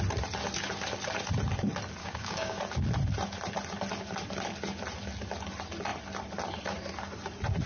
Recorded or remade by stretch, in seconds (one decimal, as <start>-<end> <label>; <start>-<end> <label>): 0.0-2.0 recorded; 2.0-2.6 remade; 2.6-7.7 recorded